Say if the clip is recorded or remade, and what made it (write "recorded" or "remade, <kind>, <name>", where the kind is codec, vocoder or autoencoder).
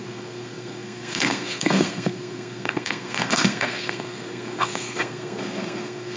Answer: remade, codec, SNAC